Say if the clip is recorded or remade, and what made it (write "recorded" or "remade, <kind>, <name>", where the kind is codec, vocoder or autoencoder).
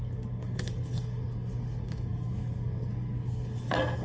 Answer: remade, codec, SNAC